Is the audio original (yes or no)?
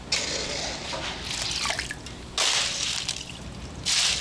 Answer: yes